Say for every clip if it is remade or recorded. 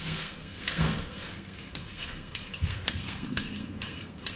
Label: remade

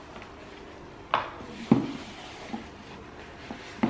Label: recorded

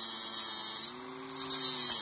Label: recorded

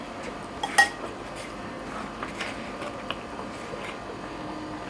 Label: recorded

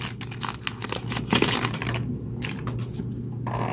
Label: recorded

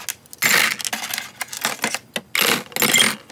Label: recorded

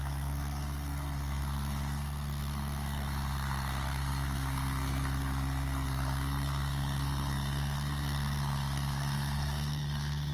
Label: remade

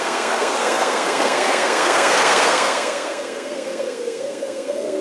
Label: remade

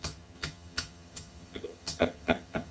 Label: remade